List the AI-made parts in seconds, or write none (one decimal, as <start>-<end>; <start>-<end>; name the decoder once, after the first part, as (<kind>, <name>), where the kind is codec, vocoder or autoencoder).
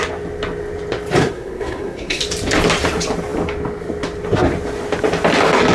1.2-2.2 (codec, SNAC)